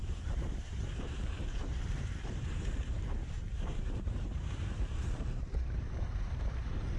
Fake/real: fake